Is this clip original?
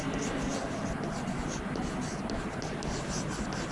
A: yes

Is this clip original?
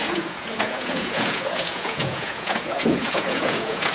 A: no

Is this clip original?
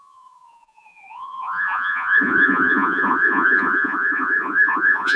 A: no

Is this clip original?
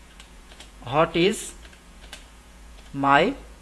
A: no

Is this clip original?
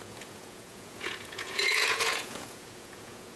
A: no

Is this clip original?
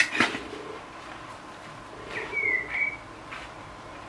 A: yes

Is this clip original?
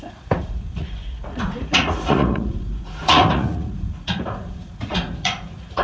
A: no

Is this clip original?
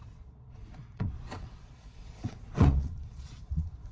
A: no